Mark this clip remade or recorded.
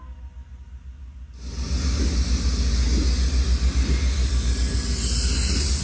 recorded